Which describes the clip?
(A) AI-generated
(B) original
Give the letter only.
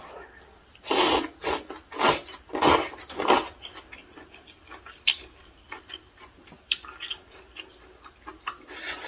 B